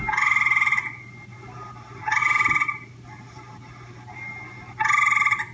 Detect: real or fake real